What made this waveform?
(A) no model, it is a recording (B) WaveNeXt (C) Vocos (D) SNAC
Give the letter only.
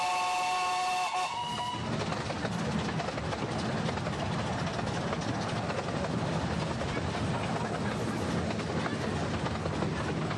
A